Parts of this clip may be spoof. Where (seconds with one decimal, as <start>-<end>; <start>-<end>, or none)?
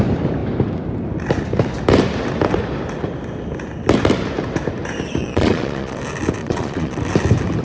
5.2-6.0; 6.4-7.0